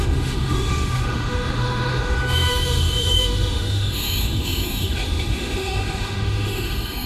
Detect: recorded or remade remade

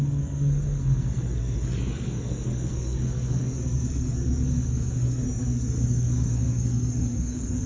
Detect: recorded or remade remade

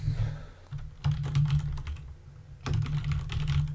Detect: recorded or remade recorded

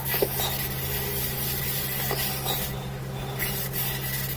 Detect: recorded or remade recorded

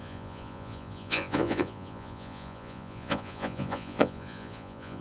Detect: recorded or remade remade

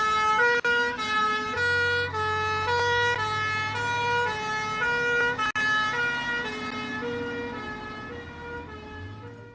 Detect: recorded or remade recorded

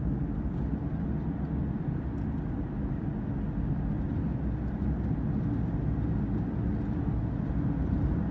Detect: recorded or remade recorded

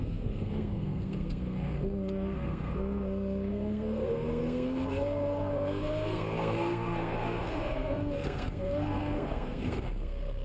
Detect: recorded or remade remade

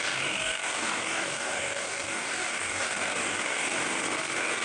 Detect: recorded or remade remade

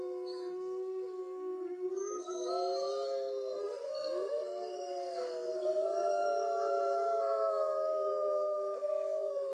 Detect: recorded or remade remade